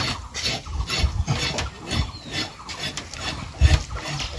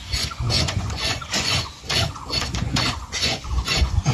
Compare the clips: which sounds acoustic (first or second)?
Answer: first